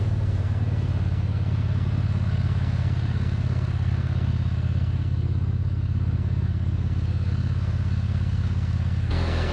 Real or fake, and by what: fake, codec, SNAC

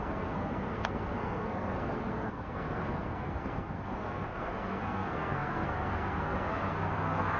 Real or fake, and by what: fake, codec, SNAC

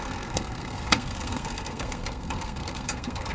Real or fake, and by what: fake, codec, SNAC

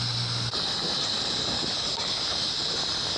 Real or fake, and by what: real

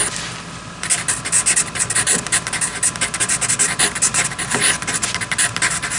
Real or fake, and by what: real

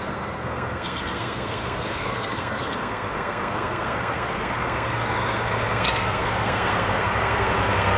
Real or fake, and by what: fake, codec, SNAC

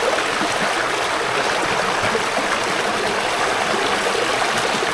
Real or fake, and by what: real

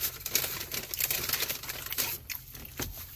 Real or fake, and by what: real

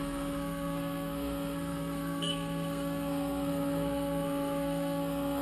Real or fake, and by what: fake, codec, SNAC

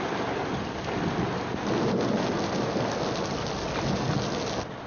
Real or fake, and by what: real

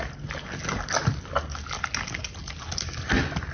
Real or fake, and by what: real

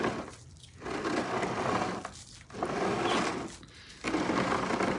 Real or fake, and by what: real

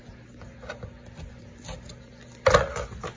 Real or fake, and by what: real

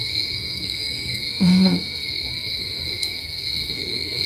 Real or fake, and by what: fake, codec, SNAC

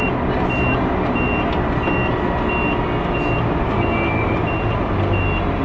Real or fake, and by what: real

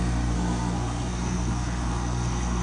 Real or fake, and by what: fake, codec, SNAC